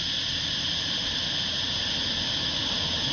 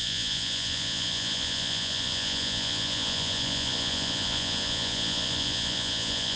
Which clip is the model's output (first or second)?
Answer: second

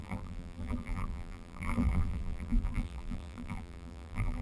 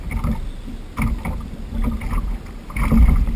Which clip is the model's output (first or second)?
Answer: first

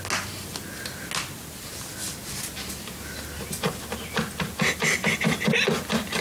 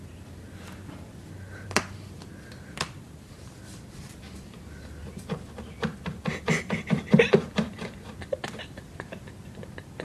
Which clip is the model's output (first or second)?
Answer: second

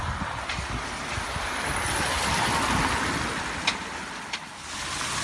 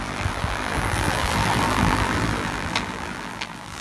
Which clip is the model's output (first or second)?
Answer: second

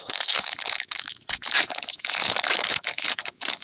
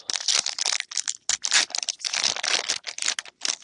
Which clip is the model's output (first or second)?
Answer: first